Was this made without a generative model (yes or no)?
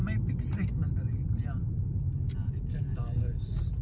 yes